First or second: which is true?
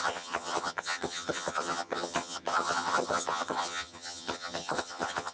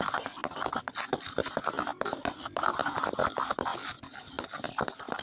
second